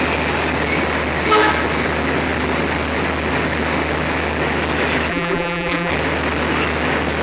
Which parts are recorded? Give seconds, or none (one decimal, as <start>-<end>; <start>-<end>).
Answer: 0.0-5.1; 5.9-7.2